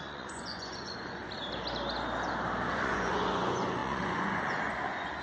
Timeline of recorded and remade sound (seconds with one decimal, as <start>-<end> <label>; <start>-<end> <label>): 0.0-1.2 remade; 1.2-2.7 recorded; 2.7-5.2 remade